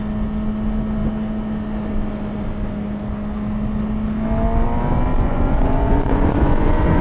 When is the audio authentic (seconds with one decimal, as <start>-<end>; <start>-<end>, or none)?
0.0-5.1